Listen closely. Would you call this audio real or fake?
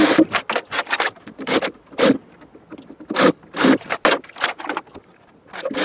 real